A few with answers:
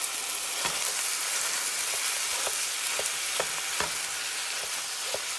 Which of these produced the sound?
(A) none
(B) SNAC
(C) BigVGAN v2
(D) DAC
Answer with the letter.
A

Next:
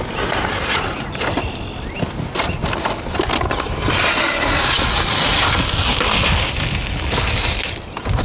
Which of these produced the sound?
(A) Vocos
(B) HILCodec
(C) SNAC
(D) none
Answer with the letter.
D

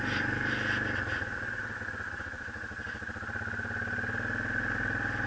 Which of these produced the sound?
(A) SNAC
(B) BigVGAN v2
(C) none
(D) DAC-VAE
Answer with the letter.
C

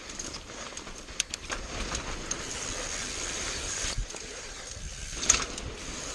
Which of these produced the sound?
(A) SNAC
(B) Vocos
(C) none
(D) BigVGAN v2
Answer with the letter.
D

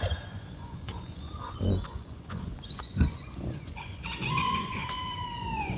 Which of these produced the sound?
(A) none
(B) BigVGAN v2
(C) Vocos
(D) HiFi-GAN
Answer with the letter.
C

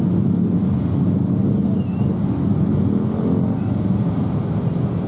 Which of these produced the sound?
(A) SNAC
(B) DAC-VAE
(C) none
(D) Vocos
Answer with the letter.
C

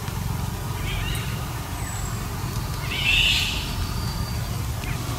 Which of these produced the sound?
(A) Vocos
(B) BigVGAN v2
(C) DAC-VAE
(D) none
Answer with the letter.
D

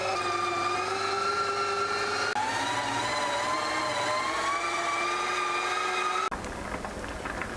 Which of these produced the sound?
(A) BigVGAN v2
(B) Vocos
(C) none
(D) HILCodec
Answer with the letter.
C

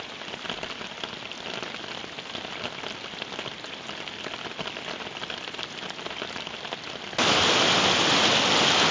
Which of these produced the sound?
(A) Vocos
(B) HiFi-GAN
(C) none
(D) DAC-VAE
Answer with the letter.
C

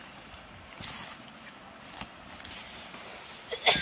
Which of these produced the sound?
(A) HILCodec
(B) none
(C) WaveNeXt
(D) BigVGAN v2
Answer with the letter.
B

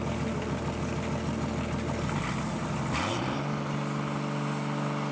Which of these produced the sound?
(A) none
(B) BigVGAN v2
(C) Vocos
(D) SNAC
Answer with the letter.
A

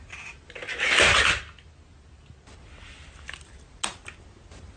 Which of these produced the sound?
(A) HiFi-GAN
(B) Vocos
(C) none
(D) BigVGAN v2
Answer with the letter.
C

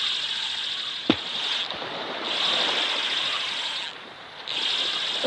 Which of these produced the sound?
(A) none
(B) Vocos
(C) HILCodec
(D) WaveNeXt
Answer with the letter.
A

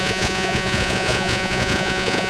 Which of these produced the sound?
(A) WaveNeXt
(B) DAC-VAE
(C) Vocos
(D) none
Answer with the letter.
C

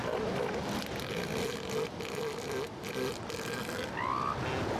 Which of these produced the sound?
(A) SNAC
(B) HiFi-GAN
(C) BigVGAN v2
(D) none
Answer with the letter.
D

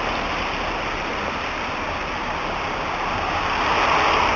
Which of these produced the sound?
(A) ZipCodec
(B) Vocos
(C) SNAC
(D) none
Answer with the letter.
D